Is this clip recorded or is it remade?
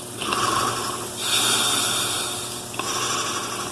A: recorded